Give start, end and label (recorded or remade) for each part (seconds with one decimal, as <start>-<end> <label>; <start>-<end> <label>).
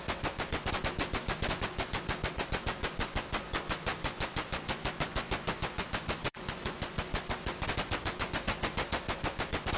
0.0-9.8 remade